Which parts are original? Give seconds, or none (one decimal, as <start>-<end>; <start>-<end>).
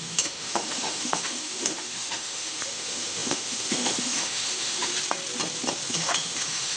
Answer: 4.9-5.9